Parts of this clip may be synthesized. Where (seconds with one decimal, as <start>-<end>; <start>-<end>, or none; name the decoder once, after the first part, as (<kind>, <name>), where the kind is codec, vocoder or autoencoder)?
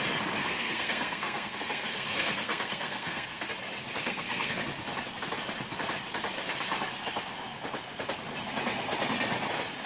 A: 0.4-3.5 (codec, SNAC); 4.0-4.5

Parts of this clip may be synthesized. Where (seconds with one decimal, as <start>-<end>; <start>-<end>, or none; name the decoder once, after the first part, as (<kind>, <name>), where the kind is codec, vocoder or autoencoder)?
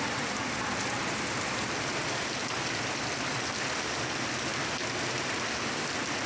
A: none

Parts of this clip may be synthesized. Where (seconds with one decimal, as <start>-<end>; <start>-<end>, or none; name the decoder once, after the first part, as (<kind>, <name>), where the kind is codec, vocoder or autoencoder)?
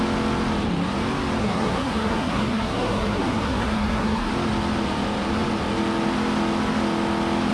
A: 1.4-4.3 (codec, SNAC)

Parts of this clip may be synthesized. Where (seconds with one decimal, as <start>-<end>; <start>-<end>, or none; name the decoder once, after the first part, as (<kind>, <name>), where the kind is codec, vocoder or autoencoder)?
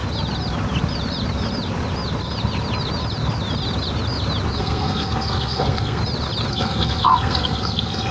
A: 4.6-6.0 (codec, SNAC); 6.5-8.1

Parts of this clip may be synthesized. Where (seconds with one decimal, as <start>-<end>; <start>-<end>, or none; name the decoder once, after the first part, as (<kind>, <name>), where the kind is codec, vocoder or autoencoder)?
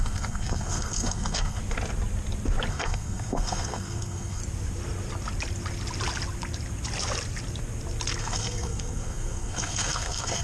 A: 0.0-1.6 (codec, SNAC); 2.7-4.4; 8.2-10.4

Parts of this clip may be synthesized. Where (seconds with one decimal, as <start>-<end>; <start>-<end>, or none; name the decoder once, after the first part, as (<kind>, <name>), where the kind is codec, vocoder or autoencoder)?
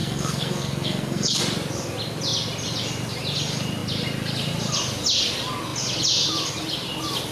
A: 0.0-1.4 (codec, SNAC)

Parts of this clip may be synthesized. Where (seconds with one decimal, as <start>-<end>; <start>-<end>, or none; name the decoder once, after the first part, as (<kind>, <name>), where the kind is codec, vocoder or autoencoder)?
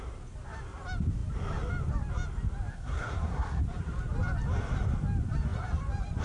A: 2.7-3.6 (codec, SNAC)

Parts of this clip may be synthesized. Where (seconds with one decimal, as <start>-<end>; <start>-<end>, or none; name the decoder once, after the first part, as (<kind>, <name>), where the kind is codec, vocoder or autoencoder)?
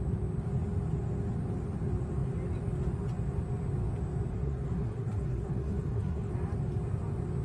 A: 4.3-6.3 (codec, SNAC)